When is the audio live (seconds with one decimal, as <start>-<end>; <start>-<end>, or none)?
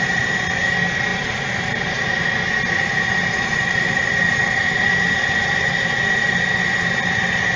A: 0.0-1.1; 2.2-7.6